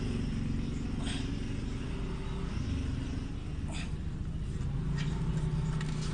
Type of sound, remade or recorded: recorded